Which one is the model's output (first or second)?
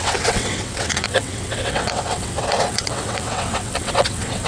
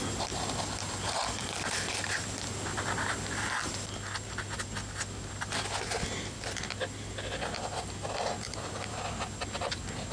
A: first